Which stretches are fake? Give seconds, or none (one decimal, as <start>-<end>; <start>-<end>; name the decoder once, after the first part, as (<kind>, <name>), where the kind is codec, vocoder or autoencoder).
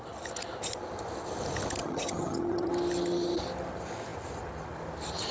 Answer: 1.8-2.7 (vocoder, HiFi-GAN)